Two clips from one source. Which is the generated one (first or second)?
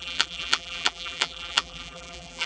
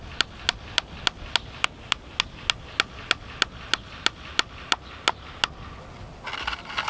first